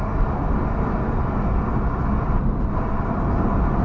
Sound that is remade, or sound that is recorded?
recorded